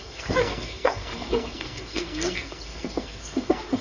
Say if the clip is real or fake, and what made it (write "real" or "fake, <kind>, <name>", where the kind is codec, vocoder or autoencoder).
fake, codec, SNAC